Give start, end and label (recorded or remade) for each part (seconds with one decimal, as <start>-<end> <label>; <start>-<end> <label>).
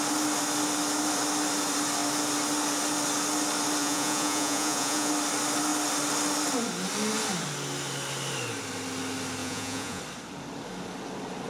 0.0-3.8 recorded; 3.8-5.1 remade; 5.1-9.4 recorded; 9.4-10.0 remade; 10.0-11.5 recorded